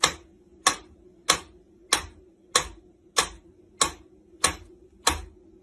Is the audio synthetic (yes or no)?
no